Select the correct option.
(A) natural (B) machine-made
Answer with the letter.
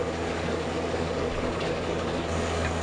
B